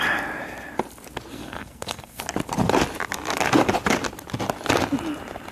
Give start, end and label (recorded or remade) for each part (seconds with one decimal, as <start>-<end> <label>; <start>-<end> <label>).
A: 0.0-1.3 recorded; 1.3-2.2 remade; 2.2-5.5 recorded